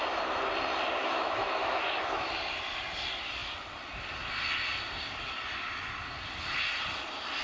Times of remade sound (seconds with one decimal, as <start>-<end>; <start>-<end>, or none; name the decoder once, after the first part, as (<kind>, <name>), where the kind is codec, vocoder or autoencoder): 1.0-2.3 (autoencoder, DAC-VAE)